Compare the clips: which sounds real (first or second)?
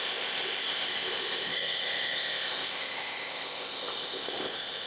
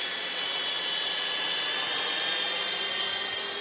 second